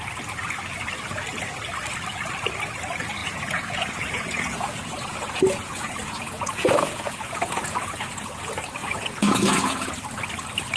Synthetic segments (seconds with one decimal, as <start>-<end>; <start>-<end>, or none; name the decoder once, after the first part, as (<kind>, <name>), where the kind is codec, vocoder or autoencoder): 3.2-8.4 (vocoder, Vocos); 8.8-9.9